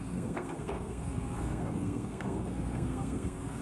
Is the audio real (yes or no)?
no